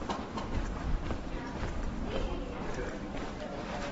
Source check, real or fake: fake